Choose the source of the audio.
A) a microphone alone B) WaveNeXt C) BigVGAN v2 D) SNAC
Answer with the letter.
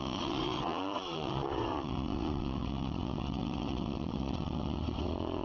B